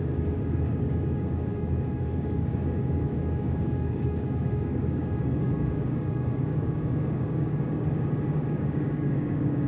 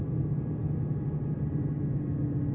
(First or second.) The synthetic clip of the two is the first